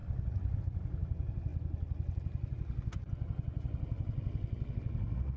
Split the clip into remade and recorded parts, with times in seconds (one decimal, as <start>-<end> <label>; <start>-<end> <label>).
0.0-5.4 recorded